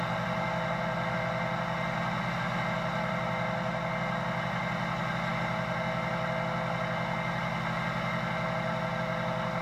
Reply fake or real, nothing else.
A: real